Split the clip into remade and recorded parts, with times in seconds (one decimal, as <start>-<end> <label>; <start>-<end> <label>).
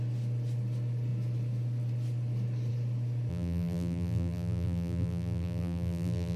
0.0-3.3 recorded; 3.3-6.4 remade